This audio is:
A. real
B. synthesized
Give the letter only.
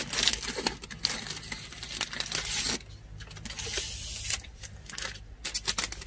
A